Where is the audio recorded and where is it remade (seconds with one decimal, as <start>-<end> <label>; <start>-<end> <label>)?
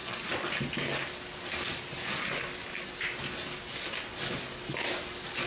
0.0-5.5 recorded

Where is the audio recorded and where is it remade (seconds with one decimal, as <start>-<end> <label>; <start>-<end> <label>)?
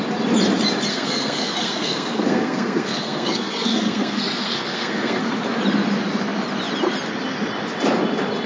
0.0-0.9 recorded; 0.9-5.2 remade; 5.2-8.5 recorded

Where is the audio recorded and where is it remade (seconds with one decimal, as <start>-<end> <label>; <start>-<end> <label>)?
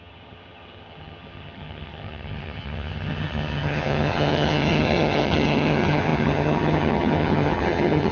0.0-8.1 remade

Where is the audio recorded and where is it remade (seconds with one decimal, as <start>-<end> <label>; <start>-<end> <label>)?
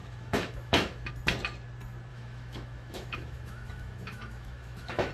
0.0-1.1 remade; 1.1-2.1 recorded; 2.1-5.1 remade